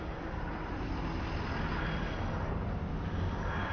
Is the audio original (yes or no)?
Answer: yes